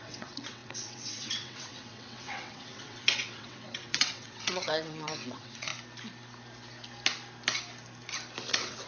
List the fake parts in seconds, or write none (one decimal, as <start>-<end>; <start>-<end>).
0.0-5.7; 8.5-8.9